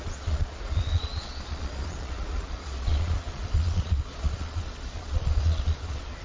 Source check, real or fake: fake